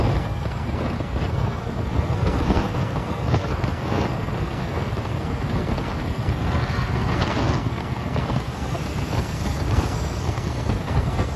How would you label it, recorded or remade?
remade